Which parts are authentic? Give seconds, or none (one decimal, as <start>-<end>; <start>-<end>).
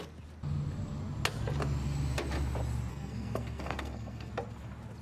0.0-2.9; 4.3-5.0